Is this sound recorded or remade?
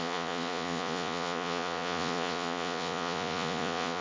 remade